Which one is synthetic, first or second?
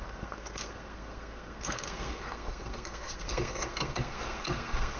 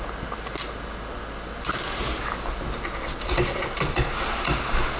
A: first